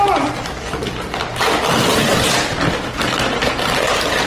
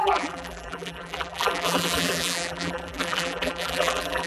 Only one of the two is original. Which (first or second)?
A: first